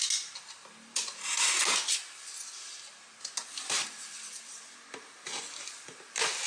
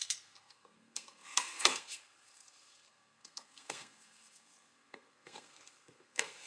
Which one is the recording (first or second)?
first